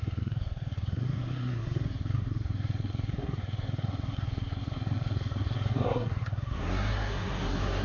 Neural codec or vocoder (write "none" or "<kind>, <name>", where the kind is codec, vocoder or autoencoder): codec, SNAC